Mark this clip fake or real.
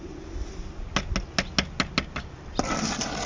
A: real